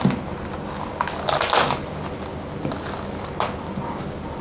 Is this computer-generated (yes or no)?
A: no